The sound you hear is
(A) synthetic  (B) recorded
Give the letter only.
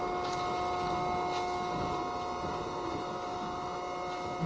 B